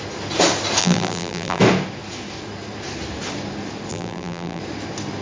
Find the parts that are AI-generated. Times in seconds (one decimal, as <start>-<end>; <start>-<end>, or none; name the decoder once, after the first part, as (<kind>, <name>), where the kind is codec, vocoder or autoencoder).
0.8-1.6 (vocoder, BigVGAN v2); 3.9-4.6